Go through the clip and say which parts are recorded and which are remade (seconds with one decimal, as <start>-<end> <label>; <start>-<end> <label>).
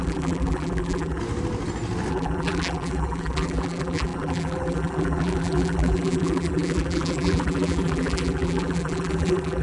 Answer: 0.0-1.2 remade; 1.2-2.1 recorded; 2.1-9.6 remade